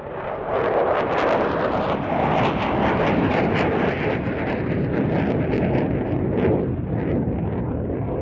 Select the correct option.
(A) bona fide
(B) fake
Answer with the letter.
B